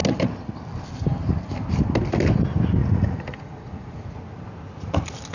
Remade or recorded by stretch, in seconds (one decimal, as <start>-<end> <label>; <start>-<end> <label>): 0.0-2.8 recorded; 2.8-4.0 remade; 4.0-5.3 recorded